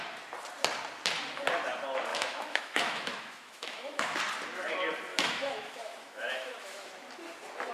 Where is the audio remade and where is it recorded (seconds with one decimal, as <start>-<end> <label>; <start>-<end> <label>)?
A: 0.0-2.1 recorded; 2.1-4.2 remade; 4.2-5.1 recorded; 5.1-6.9 remade; 6.9-7.7 recorded